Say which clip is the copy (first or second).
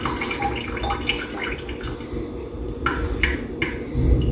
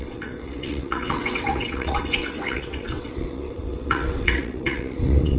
second